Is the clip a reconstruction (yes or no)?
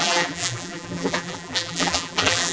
yes